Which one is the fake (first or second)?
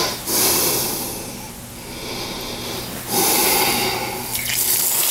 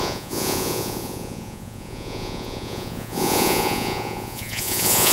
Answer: second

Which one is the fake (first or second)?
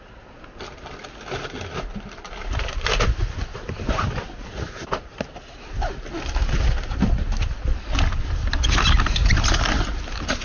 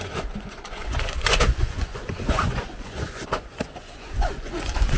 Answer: second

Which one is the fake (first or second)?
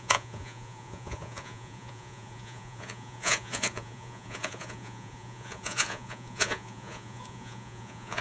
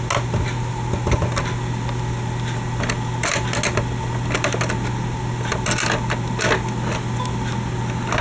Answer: first